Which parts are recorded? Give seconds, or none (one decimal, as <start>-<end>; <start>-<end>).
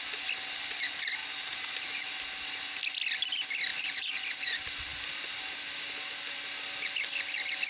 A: 0.0-1.2; 1.9-3.7; 4.2-7.7